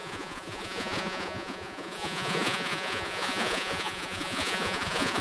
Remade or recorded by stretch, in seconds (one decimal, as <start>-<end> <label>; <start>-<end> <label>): 0.0-5.2 remade